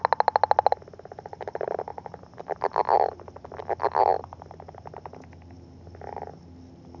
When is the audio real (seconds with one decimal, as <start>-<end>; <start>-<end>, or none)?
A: 0.0-7.0